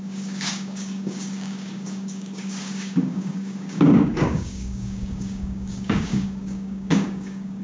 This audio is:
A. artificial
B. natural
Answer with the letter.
A